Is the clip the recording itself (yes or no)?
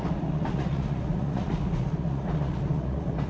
no